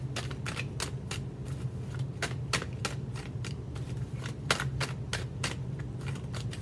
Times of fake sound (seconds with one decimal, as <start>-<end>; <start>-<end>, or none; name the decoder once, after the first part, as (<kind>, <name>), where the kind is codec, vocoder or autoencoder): none